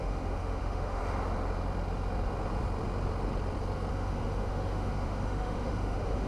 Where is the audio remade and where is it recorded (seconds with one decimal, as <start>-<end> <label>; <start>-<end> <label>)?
0.0-1.0 remade; 1.0-3.9 recorded; 3.9-6.3 remade